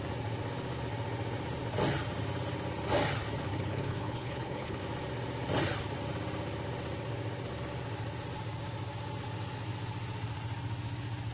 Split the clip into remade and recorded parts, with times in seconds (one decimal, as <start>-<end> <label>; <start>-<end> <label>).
0.0-3.5 recorded; 3.5-4.8 remade; 4.8-11.3 recorded